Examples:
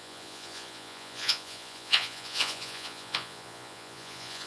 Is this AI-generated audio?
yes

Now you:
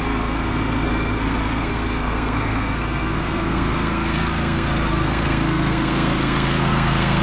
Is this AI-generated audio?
yes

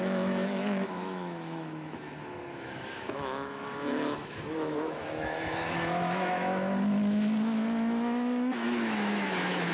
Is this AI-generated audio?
yes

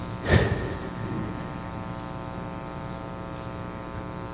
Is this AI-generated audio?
no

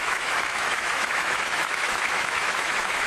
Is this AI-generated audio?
yes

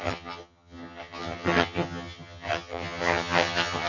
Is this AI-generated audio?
yes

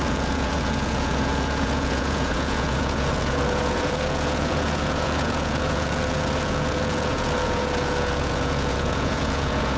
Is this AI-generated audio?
yes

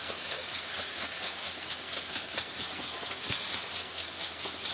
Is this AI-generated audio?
yes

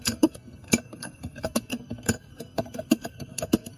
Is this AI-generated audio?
yes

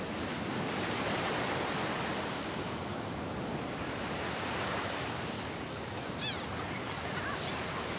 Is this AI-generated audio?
no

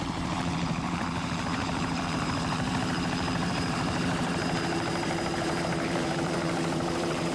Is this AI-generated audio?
yes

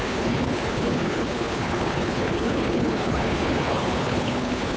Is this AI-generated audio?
yes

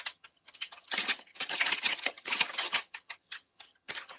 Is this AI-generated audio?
yes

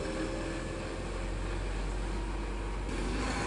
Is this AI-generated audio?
no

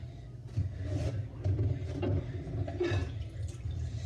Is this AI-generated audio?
no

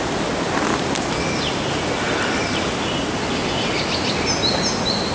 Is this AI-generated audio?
no